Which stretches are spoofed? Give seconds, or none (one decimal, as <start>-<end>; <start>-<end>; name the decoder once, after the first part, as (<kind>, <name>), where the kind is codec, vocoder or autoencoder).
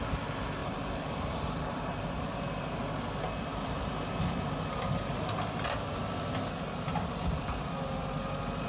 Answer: 0.6-2.3 (vocoder, BigVGAN v2)